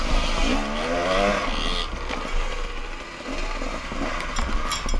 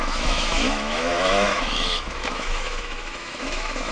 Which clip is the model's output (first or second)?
second